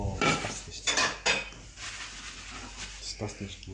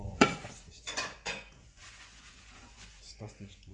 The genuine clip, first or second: first